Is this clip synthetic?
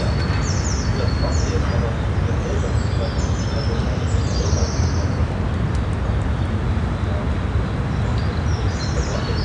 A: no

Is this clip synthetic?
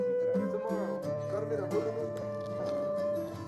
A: yes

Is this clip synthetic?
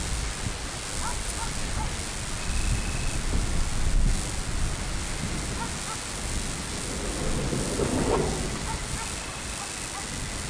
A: no